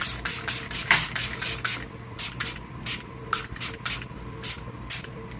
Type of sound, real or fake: fake